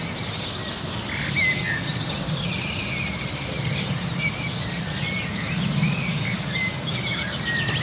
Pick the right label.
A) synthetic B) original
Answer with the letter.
B